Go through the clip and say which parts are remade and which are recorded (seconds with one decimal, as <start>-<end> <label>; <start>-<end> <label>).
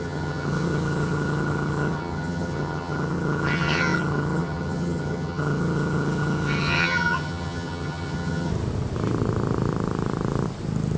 0.0-8.5 remade; 8.5-11.0 recorded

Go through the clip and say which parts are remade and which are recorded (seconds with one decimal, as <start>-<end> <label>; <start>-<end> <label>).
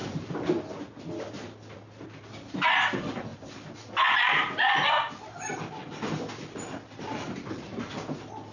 0.0-8.5 recorded